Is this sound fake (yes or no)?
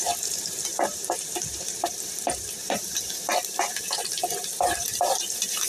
yes